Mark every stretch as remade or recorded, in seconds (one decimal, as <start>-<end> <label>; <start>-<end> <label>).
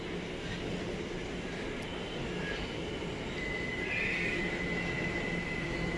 0.0-6.0 recorded